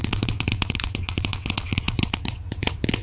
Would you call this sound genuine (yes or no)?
no